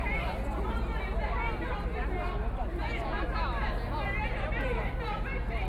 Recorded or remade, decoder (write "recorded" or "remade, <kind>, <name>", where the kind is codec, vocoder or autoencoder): recorded